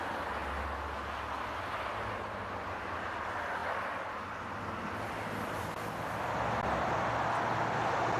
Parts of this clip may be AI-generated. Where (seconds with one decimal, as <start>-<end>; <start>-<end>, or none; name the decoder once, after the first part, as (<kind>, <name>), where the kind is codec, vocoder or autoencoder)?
none